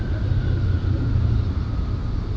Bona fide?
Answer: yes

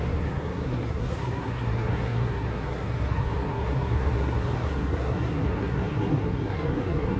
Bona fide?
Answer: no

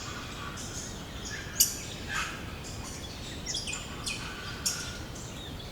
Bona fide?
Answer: yes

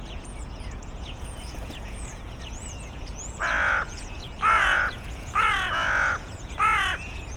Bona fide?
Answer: no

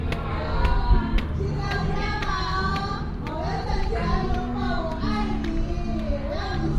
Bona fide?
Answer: yes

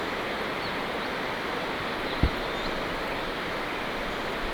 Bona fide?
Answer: yes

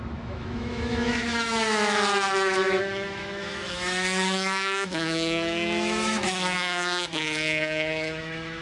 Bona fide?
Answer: no